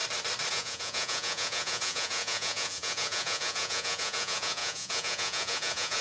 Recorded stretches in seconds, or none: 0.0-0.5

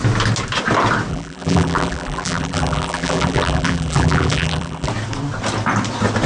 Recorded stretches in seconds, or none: 0.0-1.1; 4.9-6.3

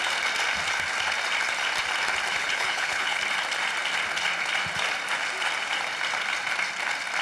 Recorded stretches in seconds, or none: 0.0-2.4; 3.2-7.2

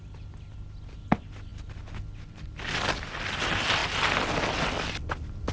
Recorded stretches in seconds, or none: 0.0-5.5

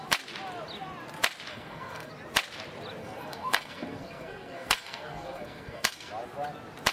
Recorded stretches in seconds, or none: 0.0-1.5; 2.1-3.0; 6.1-6.9

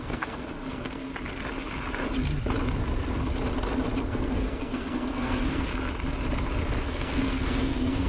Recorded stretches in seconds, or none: 1.1-4.0; 5.7-6.8

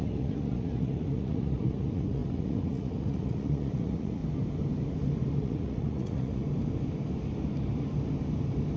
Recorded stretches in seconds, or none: 4.2-5.4; 6.4-8.8